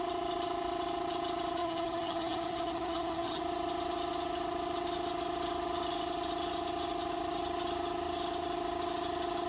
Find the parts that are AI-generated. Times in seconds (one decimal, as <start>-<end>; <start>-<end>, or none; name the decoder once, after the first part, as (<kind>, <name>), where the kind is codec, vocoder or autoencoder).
1.6-3.4 (vocoder, HiFi-GAN)